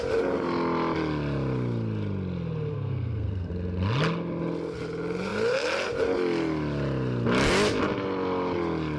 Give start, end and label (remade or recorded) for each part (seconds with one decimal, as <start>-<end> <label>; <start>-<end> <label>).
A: 0.0-2.7 recorded; 2.7-3.5 remade; 3.5-9.0 recorded